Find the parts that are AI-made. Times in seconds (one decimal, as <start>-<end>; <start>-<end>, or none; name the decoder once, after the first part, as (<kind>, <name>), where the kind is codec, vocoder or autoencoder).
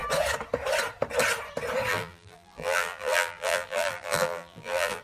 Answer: 1.9-5.0 (vocoder, BigVGAN v2)